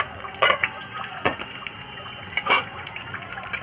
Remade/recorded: remade